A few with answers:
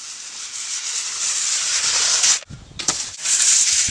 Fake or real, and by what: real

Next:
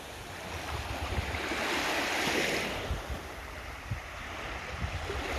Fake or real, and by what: real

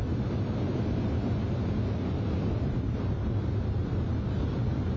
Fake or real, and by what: fake, vocoder, BigVGAN v2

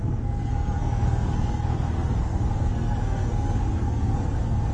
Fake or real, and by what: fake, codec, SNAC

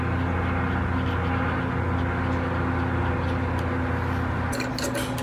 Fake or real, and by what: real